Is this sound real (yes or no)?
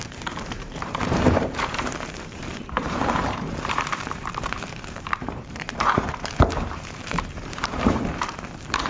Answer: no